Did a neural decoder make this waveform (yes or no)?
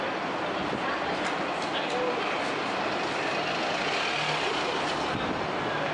no